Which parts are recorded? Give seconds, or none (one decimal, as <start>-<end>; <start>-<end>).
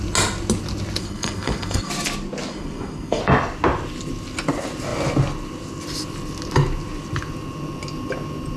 0.0-1.0; 1.9-2.5; 3.2-8.6